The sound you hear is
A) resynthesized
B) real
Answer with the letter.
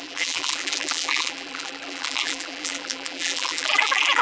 A